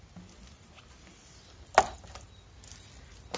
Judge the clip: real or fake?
real